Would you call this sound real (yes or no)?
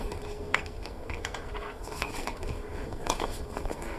no